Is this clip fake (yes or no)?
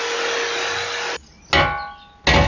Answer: no